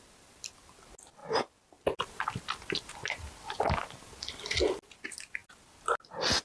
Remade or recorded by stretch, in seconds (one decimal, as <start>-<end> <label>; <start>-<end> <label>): 0.0-6.4 recorded